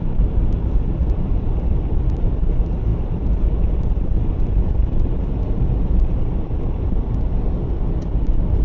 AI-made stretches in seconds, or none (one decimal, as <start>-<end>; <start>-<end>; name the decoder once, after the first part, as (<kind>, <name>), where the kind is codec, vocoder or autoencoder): 1.0-2.3 (vocoder, BigVGAN v2); 6.7-7.4

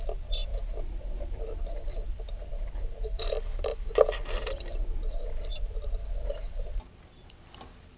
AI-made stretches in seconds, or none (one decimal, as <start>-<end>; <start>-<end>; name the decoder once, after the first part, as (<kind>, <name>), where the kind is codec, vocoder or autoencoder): none